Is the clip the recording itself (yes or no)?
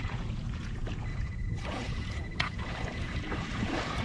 no